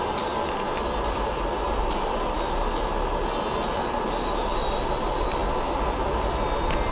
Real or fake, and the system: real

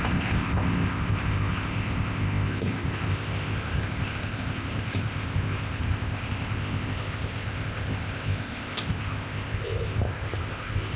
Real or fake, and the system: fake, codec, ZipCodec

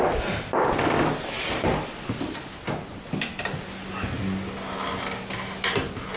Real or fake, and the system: real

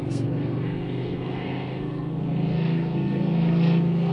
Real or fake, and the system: fake, codec, SNAC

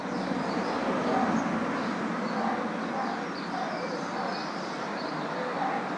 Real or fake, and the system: real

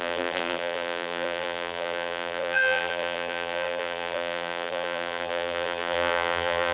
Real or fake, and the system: fake, vocoder, BigVGAN v2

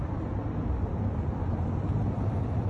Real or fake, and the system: real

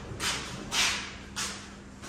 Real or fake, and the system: real